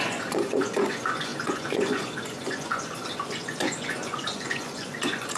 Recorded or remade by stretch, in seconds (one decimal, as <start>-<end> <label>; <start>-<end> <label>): 0.0-5.4 remade